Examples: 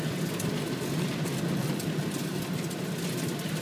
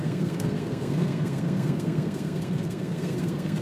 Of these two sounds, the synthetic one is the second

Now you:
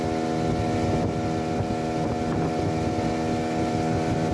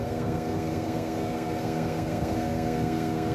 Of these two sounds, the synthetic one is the second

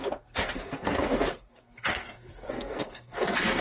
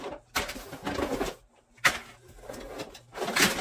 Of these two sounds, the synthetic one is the first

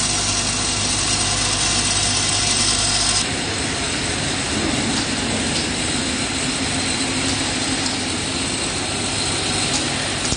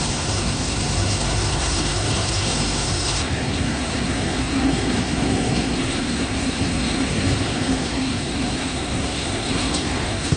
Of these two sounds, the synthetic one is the second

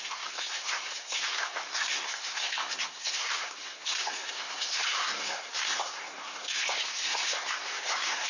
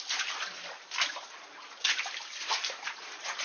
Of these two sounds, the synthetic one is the first